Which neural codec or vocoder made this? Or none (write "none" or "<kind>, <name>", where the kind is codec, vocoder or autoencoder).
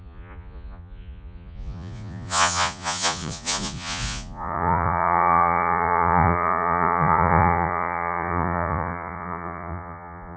vocoder, Vocos